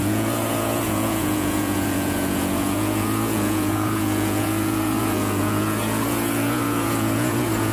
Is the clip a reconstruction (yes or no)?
yes